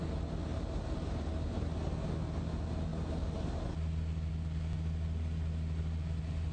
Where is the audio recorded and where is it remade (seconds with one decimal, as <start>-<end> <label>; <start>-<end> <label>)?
0.0-6.5 recorded